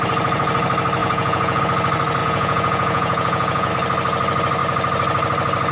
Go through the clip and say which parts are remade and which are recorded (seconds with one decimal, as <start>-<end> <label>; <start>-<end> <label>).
0.0-1.0 recorded; 1.0-1.6 remade; 1.6-2.2 recorded; 2.2-3.7 remade; 3.7-5.7 recorded